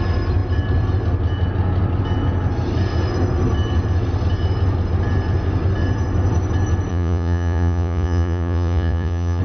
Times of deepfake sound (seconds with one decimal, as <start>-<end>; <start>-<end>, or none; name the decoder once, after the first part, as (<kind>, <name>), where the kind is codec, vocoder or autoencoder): 6.9-9.4 (vocoder, Vocos)